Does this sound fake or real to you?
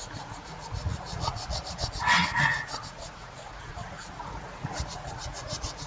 fake